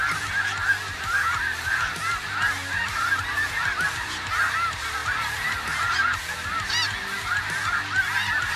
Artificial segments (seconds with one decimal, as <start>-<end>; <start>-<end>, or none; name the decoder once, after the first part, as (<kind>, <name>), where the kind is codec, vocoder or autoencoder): none